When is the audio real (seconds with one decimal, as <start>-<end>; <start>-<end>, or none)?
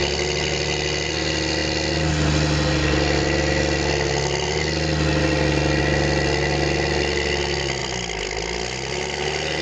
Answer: 0.0-9.6